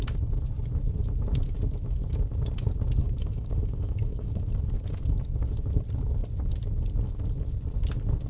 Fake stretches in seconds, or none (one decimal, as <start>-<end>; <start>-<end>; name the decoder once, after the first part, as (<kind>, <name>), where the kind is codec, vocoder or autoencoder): 3.0-4.5 (codec, DAC)